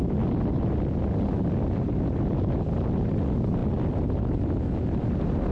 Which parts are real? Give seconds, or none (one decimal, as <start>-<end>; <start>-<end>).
0.0-5.5